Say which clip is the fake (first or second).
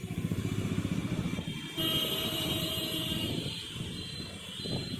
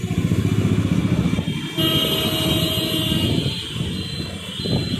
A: first